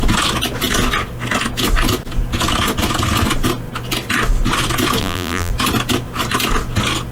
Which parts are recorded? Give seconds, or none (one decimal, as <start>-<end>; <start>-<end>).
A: 0.0-5.0; 5.5-7.1